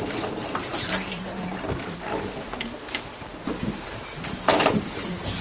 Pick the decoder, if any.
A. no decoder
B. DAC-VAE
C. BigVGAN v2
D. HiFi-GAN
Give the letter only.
C